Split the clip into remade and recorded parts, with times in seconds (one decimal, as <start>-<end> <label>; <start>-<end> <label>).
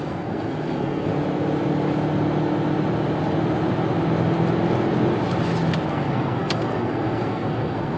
0.0-1.1 remade; 1.1-5.9 recorded; 5.9-8.0 remade